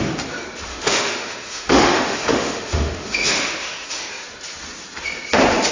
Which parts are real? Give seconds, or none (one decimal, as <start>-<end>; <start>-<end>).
0.0-0.7; 4.1-5.7